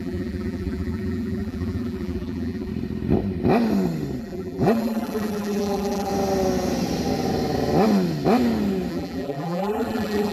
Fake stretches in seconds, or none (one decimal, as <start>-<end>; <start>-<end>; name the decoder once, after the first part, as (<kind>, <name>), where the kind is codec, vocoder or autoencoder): 0.0-2.7 (vocoder, BigVGAN v2); 4.2-6.1; 8.9-10.3